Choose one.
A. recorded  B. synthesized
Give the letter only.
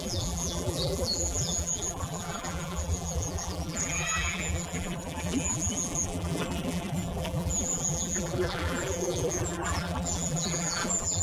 B